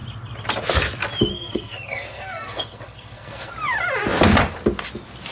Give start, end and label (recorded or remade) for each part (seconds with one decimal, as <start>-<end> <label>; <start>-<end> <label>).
0.0-1.3 recorded; 1.3-3.5 remade; 3.5-5.3 recorded